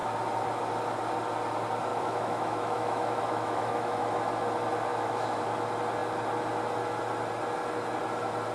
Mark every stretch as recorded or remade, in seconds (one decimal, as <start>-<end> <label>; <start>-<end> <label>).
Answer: 0.0-1.9 recorded; 1.9-4.0 remade; 4.0-4.9 recorded; 4.9-5.4 remade; 5.4-8.5 recorded